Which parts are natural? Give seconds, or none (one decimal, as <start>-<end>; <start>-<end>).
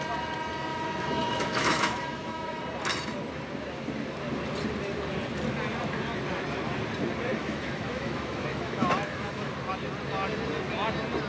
0.0-0.7; 2.6-7.4; 9.5-11.3